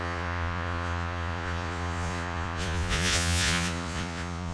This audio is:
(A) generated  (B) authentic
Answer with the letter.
A